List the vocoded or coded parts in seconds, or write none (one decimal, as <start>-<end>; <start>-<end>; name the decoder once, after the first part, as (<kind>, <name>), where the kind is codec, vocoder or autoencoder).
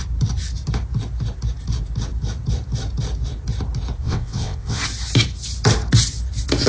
4.0-4.8 (vocoder, WaveNeXt)